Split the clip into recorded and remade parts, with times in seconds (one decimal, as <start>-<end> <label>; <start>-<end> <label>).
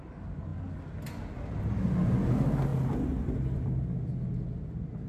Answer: 0.0-5.1 recorded